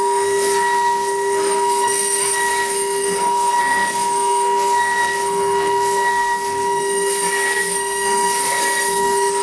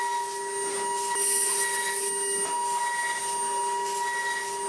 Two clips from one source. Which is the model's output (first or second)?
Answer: first